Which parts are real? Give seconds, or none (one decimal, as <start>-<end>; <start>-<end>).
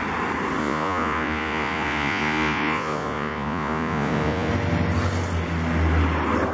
0.0-0.6; 4.5-6.5